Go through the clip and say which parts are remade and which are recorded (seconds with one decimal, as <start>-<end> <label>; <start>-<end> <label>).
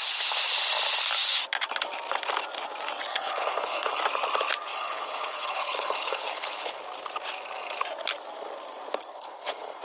0.0-3.1 recorded; 3.1-4.0 remade; 4.0-4.7 recorded; 4.7-6.8 remade; 6.8-9.1 recorded; 9.1-9.8 remade